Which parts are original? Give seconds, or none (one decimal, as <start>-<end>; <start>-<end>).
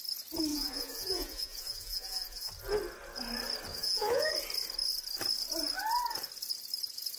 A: 0.0-0.5; 2.5-3.7; 4.3-7.2